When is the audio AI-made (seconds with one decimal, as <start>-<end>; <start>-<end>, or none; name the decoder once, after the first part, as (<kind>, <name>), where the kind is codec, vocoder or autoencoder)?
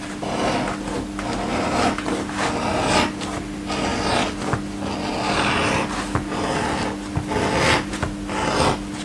none